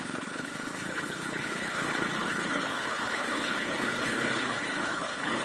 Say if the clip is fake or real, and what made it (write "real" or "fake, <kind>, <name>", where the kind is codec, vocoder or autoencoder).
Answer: fake, codec, HILCodec